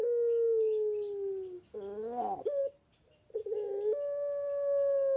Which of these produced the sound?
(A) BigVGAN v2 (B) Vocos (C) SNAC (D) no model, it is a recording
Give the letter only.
D